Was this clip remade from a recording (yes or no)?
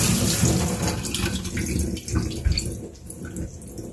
no